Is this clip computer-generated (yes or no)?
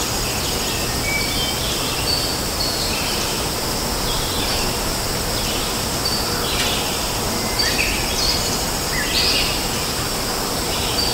no